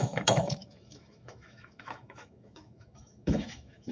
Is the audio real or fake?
fake